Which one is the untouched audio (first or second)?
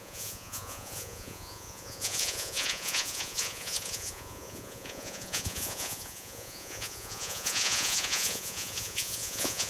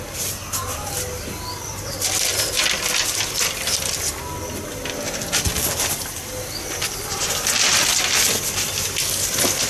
second